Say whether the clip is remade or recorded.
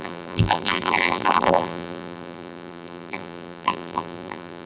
remade